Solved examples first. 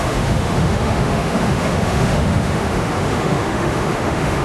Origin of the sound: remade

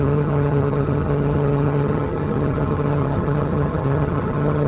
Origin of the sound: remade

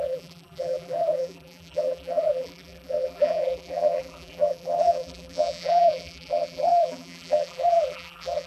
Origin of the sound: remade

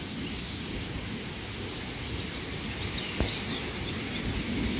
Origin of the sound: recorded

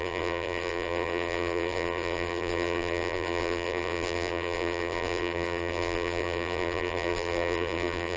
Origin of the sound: remade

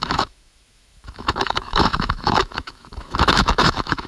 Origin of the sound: remade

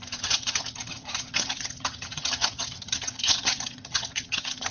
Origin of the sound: remade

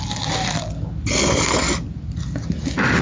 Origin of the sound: recorded